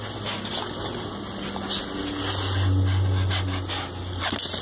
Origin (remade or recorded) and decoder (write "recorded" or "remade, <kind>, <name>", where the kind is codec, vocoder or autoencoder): recorded